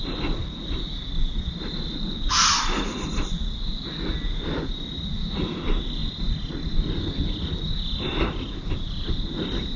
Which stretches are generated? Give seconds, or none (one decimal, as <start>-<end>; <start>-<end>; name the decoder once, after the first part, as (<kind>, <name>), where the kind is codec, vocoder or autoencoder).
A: none

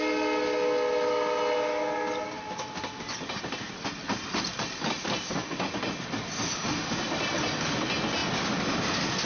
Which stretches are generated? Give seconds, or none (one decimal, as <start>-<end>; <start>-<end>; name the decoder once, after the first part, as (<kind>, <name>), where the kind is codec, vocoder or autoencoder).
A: none

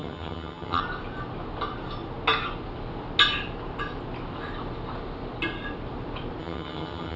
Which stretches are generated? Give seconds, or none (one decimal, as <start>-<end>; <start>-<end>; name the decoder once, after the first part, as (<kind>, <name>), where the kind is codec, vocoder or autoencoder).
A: 0.0-0.8 (vocoder, HiFi-GAN); 6.4-7.2

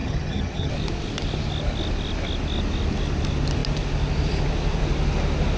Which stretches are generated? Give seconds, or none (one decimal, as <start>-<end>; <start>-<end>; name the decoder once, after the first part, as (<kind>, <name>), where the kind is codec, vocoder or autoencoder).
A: 0.0-0.7 (vocoder, HiFi-GAN)

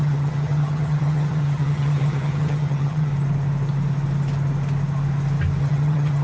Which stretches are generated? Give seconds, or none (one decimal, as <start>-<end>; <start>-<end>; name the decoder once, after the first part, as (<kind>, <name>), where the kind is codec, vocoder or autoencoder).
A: 0.0-3.1 (vocoder, HiFi-GAN); 5.6-6.2